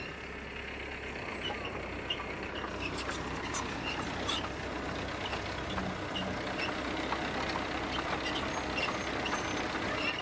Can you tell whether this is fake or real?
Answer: real